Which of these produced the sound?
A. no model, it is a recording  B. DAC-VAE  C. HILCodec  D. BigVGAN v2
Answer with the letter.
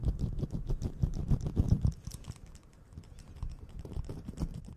D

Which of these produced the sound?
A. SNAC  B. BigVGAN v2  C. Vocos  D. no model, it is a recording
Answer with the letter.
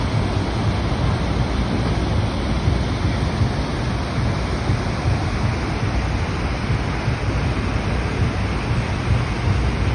D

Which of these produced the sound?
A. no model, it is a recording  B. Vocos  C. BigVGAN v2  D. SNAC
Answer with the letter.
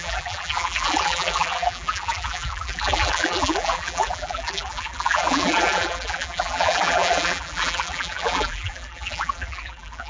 C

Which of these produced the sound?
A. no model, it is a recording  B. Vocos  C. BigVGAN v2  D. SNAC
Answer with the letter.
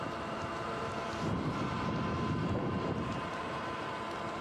C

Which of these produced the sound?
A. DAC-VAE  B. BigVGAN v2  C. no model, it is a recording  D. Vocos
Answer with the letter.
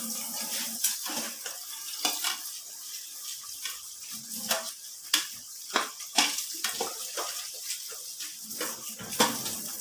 C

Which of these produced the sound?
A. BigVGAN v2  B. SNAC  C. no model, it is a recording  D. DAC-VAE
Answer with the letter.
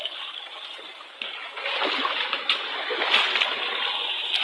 C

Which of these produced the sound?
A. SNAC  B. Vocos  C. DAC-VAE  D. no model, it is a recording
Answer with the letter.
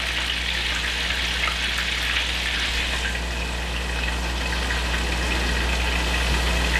D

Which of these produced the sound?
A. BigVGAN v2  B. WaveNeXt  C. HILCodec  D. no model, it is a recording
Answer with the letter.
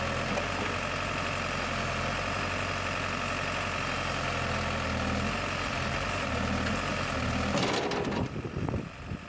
D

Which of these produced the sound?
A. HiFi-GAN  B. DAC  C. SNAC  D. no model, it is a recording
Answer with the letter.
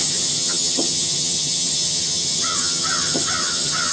A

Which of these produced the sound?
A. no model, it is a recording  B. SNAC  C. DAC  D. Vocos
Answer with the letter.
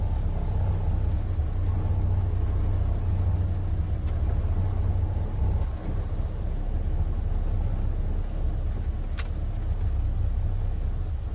A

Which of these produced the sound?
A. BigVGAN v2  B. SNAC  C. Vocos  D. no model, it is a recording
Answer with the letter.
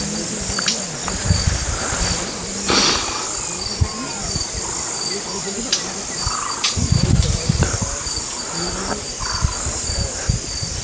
D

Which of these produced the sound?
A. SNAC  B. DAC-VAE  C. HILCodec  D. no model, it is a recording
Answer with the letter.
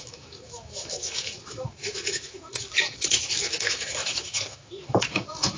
B